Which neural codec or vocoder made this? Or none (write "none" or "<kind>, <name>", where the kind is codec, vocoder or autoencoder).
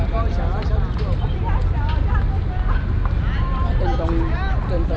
none